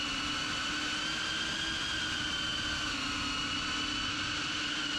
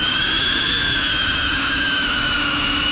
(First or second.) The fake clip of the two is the second